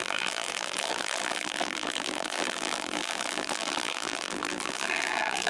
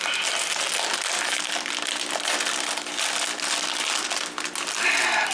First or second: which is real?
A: second